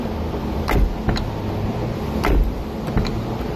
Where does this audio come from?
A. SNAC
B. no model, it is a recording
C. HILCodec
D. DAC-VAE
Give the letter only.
B